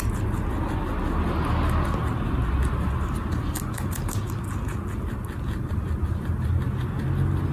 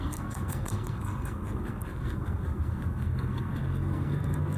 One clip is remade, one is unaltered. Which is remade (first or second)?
second